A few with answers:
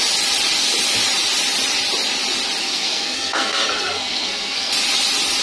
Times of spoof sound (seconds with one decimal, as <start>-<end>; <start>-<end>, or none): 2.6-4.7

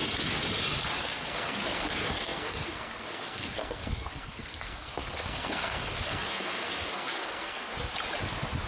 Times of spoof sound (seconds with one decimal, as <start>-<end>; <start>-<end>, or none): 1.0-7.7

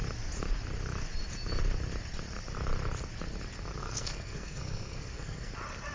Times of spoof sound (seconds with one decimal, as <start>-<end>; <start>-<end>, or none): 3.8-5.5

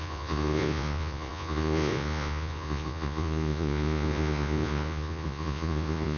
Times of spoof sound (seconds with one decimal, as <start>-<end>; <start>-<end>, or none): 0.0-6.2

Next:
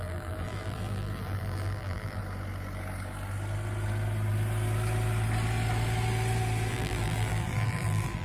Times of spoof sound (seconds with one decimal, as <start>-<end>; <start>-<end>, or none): 0.0-2.2; 6.7-8.2